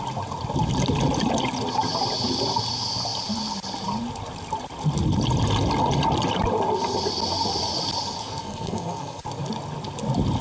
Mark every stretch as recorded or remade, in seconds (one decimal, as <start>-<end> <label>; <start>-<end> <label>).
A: 0.0-8.2 recorded; 8.2-9.2 remade; 9.2-10.4 recorded